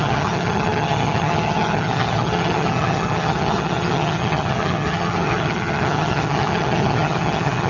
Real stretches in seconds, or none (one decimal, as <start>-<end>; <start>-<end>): none